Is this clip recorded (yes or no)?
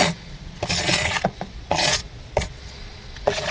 no